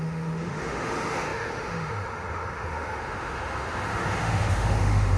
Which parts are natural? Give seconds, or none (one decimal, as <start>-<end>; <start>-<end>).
none